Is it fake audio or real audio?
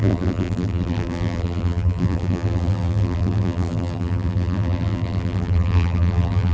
fake